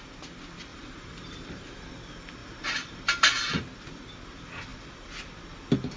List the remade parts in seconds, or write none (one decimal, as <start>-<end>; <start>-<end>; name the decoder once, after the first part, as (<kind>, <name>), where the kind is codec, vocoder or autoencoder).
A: 0.7-1.9 (vocoder, BigVGAN v2); 2.4-3.6